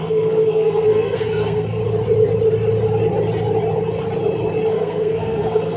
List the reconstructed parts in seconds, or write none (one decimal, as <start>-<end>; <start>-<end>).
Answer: 0.0-1.8; 4.7-5.8

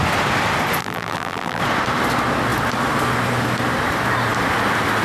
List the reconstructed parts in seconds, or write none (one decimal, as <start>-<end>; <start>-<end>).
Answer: 0.8-1.6

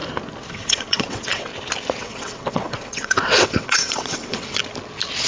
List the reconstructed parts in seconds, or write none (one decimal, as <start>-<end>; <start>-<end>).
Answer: 0.5-1.5; 2.0-4.6

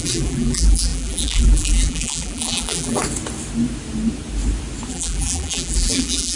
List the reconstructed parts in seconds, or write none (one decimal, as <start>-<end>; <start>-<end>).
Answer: 0.0-3.0; 4.9-6.4

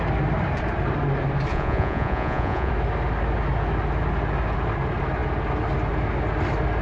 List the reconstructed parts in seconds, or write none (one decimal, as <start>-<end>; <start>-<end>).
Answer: 1.5-2.7